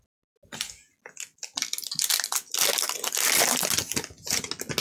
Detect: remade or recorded recorded